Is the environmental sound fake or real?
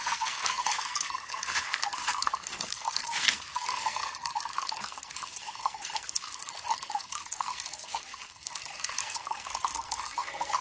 fake